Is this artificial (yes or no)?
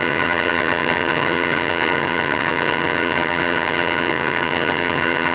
yes